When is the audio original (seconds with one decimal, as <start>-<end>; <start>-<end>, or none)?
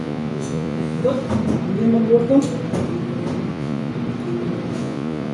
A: 1.0-3.5; 3.9-4.8